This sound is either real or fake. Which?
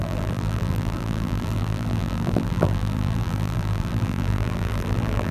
fake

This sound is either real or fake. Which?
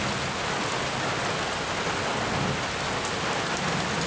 real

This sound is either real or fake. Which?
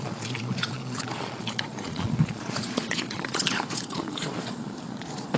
fake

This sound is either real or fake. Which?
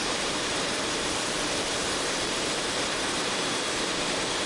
fake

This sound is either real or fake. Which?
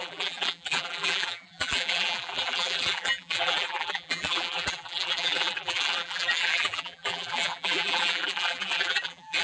fake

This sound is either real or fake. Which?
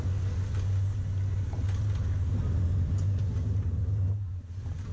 real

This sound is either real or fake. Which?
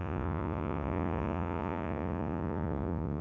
fake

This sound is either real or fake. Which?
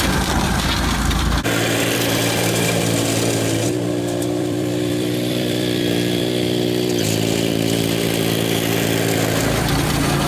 fake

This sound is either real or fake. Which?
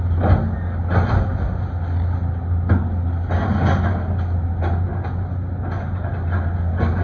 real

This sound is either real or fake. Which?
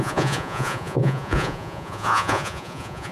fake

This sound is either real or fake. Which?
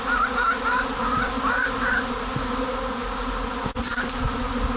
real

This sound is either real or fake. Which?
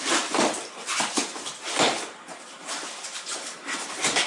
real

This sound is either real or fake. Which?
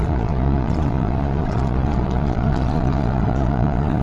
fake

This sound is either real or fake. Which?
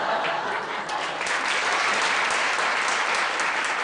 real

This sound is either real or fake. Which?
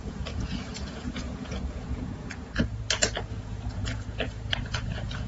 fake